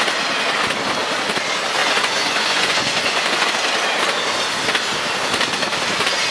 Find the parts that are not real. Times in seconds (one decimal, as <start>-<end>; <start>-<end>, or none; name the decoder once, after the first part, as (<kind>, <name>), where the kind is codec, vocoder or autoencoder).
1.8-3.5 (vocoder, Vocos)